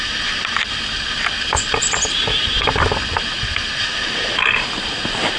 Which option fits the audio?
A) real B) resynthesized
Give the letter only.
B